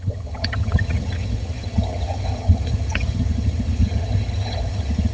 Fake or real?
fake